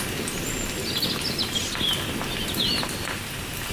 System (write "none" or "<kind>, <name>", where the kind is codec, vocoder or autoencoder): none